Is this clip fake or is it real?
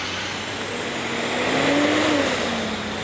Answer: real